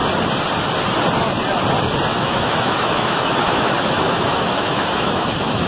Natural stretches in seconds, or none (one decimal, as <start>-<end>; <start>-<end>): 0.0-2.1